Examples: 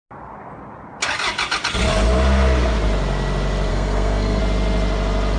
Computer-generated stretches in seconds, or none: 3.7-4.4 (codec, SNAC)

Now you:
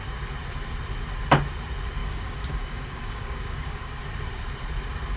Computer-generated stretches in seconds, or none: 2.0-4.0 (codec, DAC)

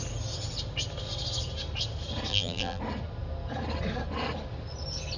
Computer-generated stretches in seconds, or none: 2.3-2.8 (vocoder, BigVGAN v2)

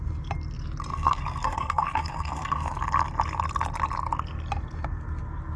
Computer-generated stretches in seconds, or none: 0.9-2.8 (codec, SNAC)